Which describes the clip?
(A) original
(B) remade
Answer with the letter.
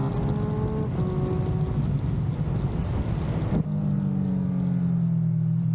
A